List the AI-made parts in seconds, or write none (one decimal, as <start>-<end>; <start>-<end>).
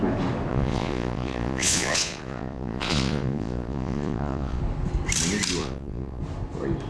0.5-4.6; 5.6-6.2